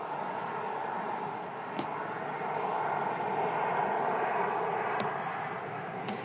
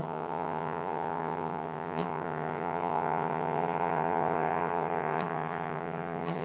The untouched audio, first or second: first